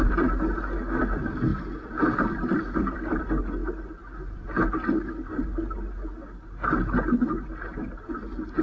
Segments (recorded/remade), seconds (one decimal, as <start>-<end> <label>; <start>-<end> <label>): 0.0-1.5 recorded; 1.5-3.2 remade; 3.2-8.6 recorded

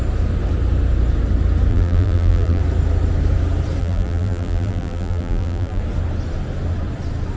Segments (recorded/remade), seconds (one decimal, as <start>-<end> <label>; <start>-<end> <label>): 0.0-1.7 recorded; 1.7-2.6 remade; 2.6-3.8 recorded; 3.8-5.8 remade; 5.8-7.4 recorded

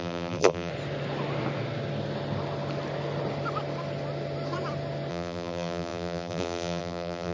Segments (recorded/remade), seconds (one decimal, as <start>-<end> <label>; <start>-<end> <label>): 0.0-0.7 remade; 0.7-5.1 recorded; 5.1-7.3 remade

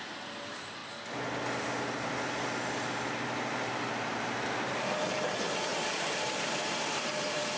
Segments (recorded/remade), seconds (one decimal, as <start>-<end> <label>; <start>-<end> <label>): 0.0-0.8 remade; 0.8-3.7 recorded; 3.7-7.6 remade

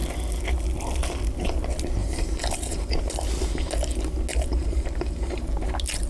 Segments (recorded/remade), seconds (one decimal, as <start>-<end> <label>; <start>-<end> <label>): 0.0-2.0 recorded; 2.0-2.9 remade; 2.9-4.3 recorded; 4.3-5.4 remade; 5.4-6.1 recorded